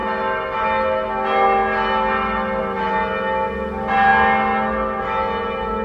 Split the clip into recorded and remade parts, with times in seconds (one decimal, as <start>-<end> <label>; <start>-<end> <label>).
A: 0.0-5.8 recorded